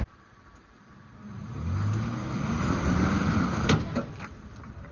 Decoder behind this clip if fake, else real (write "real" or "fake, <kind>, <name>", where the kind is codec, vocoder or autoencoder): real